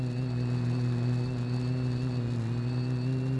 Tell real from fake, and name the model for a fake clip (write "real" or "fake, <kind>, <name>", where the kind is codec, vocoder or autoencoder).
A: real